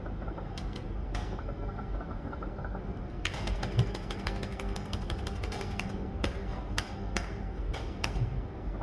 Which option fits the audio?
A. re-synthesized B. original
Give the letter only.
A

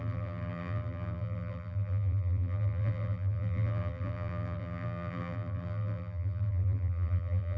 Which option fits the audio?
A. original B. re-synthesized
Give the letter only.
B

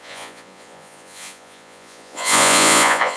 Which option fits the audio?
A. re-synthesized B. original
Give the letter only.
A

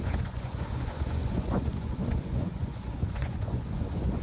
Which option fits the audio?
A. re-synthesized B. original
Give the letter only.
A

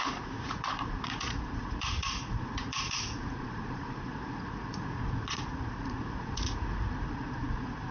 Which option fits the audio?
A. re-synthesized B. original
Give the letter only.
A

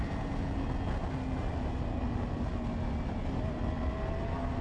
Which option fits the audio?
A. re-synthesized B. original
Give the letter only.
B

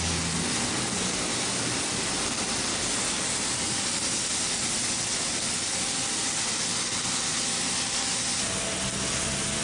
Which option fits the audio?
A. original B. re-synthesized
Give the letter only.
A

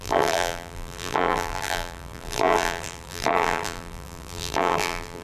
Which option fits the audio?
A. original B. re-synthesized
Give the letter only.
B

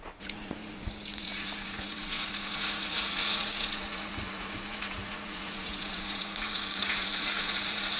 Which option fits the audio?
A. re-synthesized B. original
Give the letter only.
A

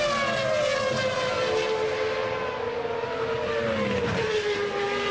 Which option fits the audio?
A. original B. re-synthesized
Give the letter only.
A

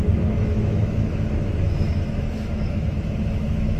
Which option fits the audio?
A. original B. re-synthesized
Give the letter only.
B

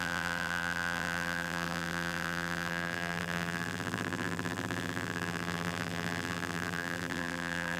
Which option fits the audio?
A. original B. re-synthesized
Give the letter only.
B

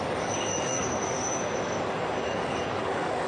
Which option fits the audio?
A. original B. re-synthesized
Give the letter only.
B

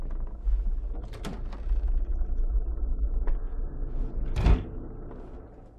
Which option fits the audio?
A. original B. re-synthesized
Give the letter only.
A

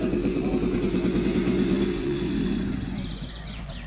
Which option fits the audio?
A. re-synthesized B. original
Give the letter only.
A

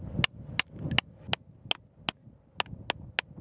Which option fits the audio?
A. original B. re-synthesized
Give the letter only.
A